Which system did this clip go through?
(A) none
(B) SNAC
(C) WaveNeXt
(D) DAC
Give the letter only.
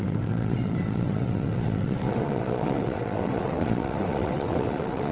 C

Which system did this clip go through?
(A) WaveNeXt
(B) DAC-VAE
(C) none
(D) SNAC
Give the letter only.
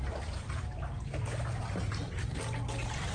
C